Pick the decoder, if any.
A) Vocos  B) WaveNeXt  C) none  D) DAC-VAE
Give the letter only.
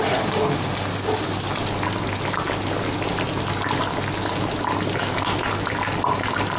C